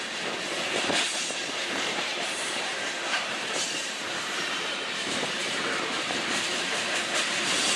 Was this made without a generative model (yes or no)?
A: no